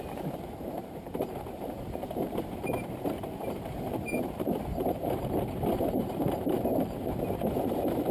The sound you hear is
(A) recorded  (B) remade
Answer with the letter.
B